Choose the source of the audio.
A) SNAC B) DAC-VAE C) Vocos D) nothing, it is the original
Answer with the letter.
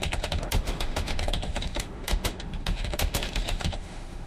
B